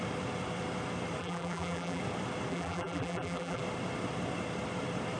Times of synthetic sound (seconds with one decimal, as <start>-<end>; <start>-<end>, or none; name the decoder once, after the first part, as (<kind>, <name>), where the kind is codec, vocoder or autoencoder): 1.2-2.0 (vocoder, BigVGAN v2); 2.5-3.6